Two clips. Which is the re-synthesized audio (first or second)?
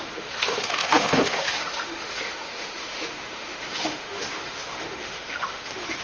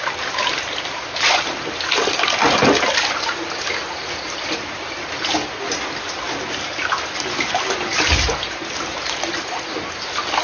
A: first